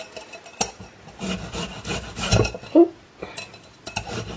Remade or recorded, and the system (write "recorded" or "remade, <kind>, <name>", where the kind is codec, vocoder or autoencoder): recorded